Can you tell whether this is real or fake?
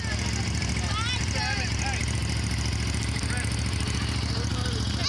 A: real